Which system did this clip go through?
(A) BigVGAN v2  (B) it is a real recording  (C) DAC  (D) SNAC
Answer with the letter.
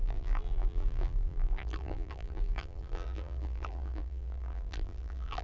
A